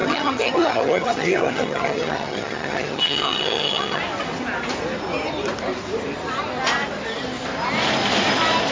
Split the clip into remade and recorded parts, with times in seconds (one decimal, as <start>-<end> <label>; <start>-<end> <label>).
0.0-4.0 remade; 4.0-8.7 recorded

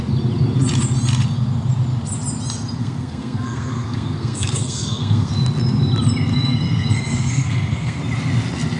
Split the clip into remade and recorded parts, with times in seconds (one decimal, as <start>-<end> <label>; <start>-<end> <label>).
0.0-2.8 recorded; 2.8-5.3 remade; 5.3-6.3 recorded; 6.3-8.0 remade; 8.0-8.8 recorded

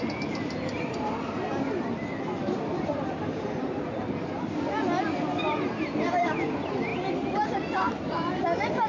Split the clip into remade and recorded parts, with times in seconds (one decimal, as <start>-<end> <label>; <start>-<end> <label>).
0.0-6.9 remade; 6.9-8.4 recorded; 8.4-8.9 remade